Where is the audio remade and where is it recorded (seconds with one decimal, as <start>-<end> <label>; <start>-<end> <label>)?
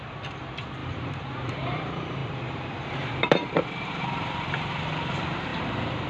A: 0.0-5.5 remade; 5.5-6.1 recorded